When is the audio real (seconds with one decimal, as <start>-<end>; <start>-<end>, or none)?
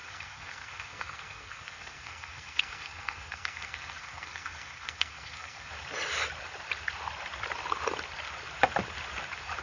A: 5.7-9.6